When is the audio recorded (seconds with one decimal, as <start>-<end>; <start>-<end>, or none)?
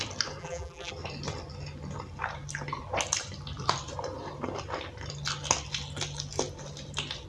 0.0-0.4; 0.9-7.3